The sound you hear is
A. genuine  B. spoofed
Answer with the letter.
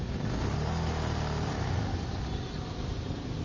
A